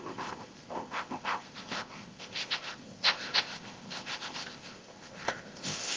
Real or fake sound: fake